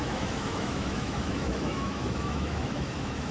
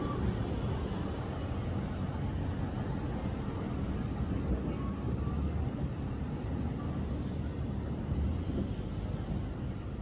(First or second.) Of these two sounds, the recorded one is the second